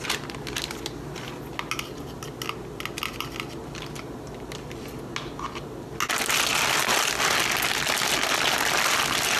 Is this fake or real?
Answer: real